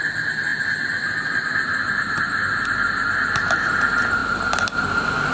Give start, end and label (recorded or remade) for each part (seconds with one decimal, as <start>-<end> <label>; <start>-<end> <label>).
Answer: 0.0-5.3 recorded